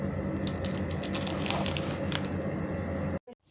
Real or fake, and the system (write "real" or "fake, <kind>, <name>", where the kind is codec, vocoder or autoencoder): real